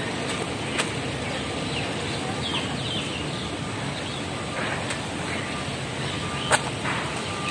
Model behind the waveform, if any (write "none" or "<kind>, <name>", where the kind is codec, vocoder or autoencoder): none